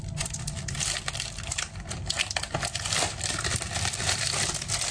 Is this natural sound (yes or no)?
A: no